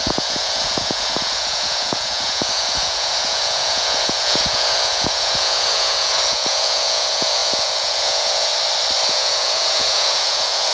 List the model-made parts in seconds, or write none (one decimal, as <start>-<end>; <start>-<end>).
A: 0.0-8.5; 9.1-10.7